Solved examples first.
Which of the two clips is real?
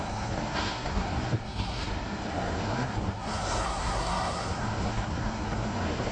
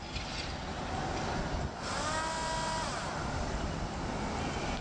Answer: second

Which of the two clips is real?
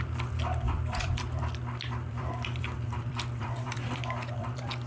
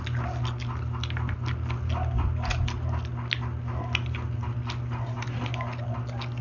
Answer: second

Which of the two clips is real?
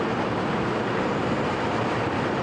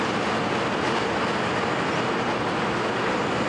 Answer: second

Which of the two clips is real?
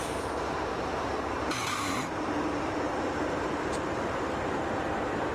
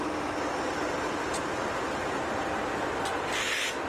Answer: second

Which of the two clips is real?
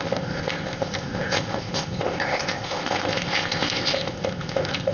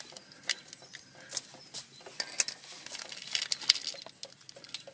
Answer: second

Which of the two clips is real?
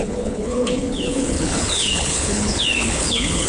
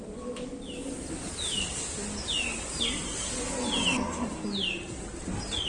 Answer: second